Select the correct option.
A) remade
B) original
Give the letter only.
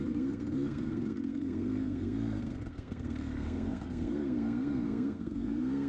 A